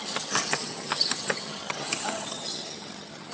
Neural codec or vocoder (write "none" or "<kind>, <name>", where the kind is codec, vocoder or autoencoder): vocoder, HiFi-GAN